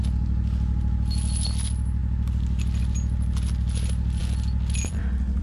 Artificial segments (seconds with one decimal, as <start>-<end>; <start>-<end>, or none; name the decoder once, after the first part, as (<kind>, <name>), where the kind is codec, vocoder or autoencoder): none